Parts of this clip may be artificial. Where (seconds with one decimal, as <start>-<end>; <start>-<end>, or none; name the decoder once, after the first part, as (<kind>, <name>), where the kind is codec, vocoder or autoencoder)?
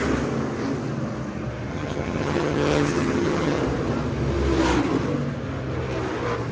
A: 1.7-3.6 (vocoder, HiFi-GAN)